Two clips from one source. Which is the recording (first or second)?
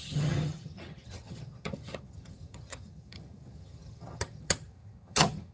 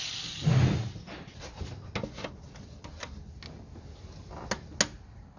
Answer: second